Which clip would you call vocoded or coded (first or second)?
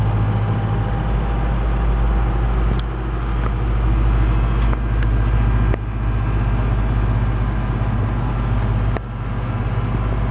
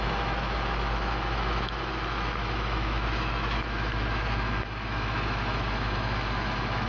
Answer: second